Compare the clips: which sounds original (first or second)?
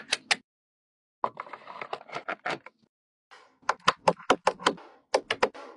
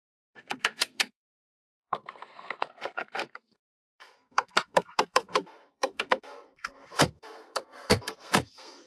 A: first